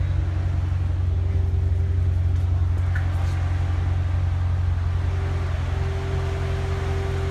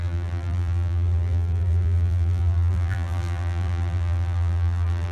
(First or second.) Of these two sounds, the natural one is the first